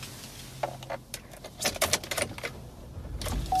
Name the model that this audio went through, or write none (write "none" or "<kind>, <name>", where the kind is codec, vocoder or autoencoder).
none